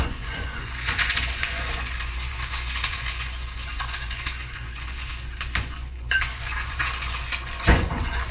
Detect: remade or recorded remade